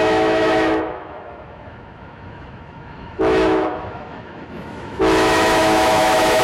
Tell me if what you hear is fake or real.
fake